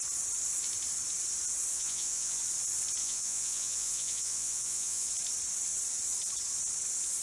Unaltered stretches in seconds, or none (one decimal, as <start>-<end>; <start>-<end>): 0.0-1.7; 2.4-3.0; 5.1-7.2